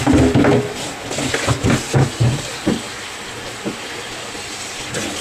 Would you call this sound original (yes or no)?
yes